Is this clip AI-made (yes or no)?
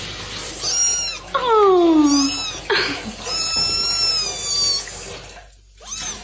no